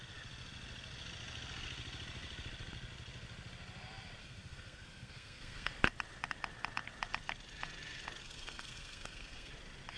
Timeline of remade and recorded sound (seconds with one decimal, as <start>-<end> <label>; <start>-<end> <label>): 0.0-4.2 recorded; 4.2-5.7 remade; 5.7-8.2 recorded; 8.2-9.5 remade; 9.5-10.0 recorded